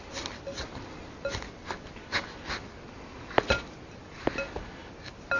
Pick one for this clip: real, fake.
real